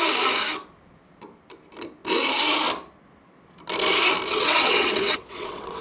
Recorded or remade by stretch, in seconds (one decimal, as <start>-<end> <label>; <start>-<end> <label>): 0.0-4.3 recorded; 4.3-5.8 remade